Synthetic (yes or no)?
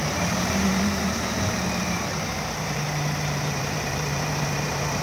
yes